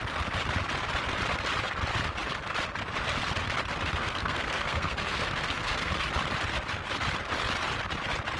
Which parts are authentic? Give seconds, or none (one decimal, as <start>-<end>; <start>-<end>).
0.0-4.0; 5.9-8.4